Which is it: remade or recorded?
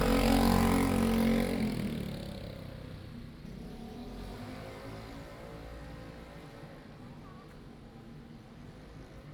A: recorded